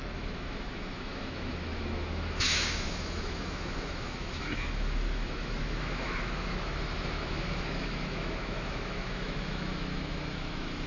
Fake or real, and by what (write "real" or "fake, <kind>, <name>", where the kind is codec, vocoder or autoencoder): fake, autoencoder, DAC-VAE